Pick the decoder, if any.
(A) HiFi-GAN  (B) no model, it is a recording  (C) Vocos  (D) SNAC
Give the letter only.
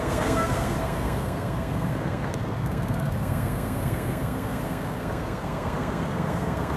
D